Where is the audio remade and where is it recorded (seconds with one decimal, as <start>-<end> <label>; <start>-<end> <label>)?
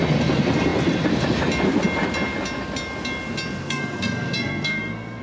0.0-3.6 recorded; 3.6-5.2 remade